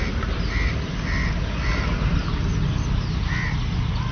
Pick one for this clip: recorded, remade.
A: recorded